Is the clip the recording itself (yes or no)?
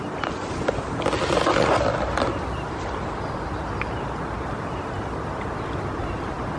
yes